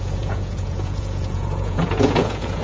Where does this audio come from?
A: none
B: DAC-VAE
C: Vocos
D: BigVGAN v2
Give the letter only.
C